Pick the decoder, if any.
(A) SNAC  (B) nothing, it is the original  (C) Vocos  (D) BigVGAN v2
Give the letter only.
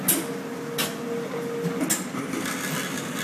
B